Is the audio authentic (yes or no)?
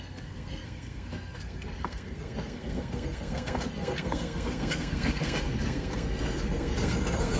no